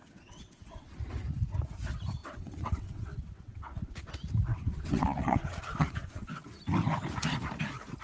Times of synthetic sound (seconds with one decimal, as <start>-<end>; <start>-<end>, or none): 0.0-0.9; 2.2-4.1; 4.5-6.6